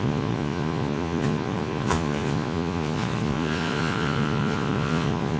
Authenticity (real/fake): fake